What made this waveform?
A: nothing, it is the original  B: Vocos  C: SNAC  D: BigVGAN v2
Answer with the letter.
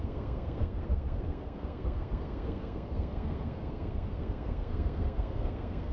C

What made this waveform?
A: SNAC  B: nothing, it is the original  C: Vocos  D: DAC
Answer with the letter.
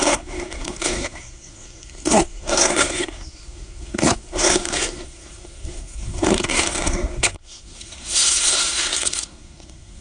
A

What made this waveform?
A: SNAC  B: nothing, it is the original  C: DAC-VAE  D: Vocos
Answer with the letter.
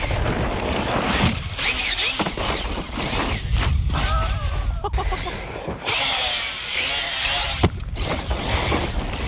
B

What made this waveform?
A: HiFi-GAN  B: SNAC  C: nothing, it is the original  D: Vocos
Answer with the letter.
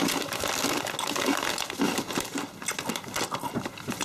C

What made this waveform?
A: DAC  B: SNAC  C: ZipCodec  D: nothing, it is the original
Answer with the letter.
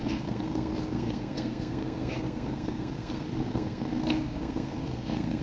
B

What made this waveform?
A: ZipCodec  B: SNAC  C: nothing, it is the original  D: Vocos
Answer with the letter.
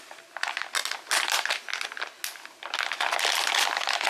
C